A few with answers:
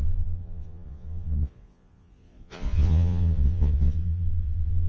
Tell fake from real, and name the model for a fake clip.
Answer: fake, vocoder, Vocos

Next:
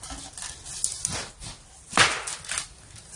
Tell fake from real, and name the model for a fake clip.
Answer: real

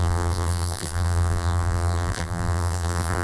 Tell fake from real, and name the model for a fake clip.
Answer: fake, vocoder, BigVGAN v2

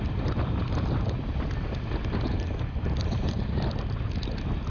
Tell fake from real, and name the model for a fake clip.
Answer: real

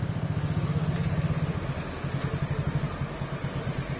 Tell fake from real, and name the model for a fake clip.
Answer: real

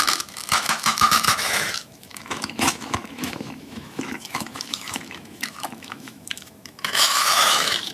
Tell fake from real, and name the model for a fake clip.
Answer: fake, autoencoder, DAC-VAE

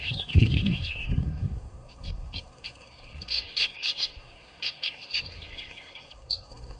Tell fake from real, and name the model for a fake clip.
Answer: fake, codec, SNAC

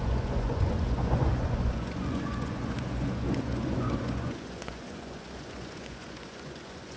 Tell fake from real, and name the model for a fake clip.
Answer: fake, vocoder, Vocos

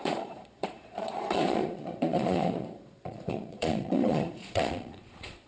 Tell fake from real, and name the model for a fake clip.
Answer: fake, vocoder, Vocos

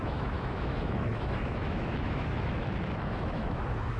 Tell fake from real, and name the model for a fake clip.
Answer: fake, autoencoder, DAC-VAE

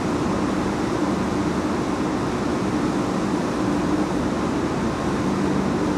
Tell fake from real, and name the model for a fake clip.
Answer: real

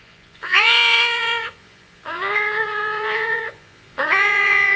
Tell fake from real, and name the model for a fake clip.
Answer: fake, vocoder, Vocos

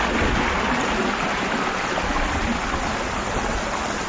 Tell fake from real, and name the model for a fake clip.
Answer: real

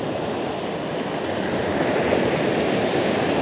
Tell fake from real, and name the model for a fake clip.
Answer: real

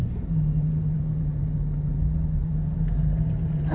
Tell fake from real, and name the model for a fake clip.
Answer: real